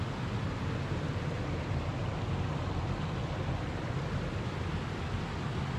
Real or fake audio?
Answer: real